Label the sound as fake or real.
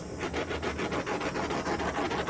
real